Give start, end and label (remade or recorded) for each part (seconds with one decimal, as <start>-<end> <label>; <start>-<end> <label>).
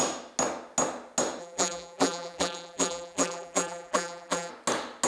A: 0.0-1.4 recorded; 1.4-4.5 remade; 4.5-5.1 recorded